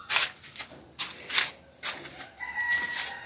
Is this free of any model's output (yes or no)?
yes